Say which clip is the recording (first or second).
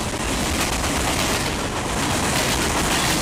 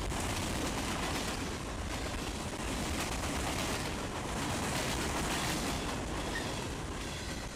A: first